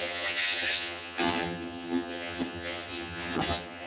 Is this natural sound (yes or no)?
no